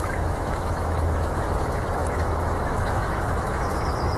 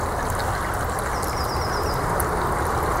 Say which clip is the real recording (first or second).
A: second